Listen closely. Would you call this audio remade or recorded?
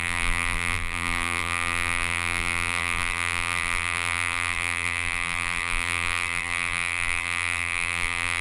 remade